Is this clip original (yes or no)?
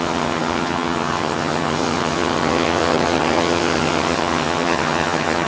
no